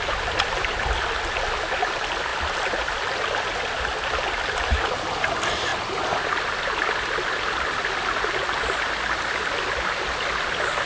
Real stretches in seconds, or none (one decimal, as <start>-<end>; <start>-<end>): 0.0-2.3; 3.3-5.7; 8.9-10.9